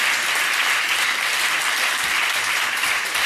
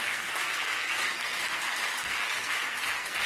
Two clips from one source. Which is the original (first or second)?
first